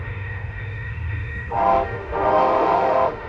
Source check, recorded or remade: remade